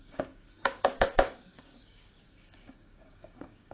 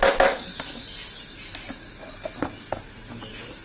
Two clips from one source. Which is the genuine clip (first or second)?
second